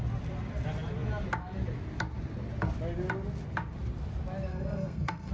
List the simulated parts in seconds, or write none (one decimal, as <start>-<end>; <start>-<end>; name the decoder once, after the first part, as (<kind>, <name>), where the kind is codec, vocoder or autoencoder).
4.5-5.3 (codec, SNAC)